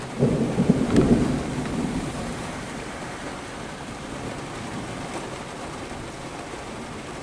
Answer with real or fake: fake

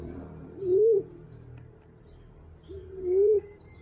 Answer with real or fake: fake